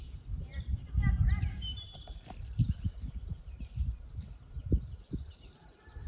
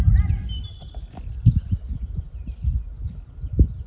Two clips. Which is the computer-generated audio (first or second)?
first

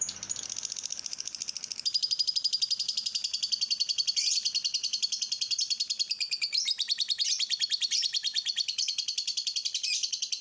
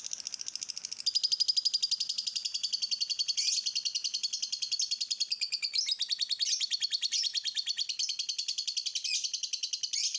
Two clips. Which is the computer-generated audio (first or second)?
first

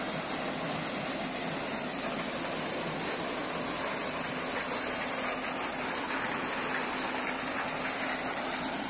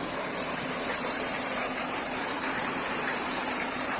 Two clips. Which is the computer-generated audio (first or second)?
second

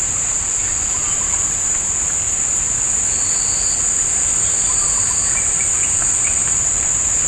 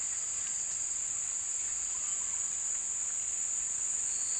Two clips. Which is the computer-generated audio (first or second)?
first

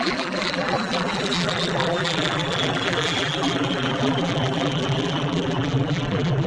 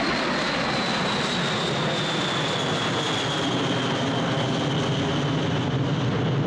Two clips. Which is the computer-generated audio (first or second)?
first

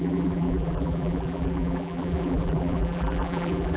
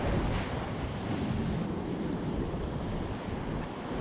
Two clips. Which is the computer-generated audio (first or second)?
first